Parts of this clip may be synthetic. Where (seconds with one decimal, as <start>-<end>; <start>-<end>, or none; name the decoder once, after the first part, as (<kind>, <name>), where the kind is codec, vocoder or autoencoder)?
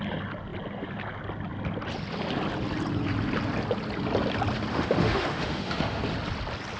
4.7-6.0 (autoencoder, DAC-VAE)